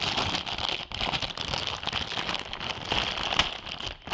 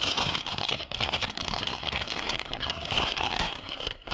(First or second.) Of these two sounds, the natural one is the first